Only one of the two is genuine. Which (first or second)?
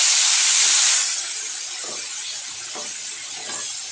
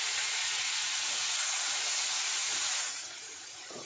first